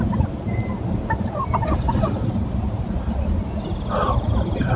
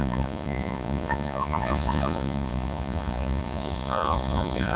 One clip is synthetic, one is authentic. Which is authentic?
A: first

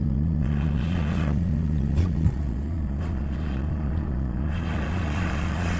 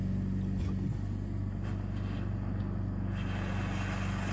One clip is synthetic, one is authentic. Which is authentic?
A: second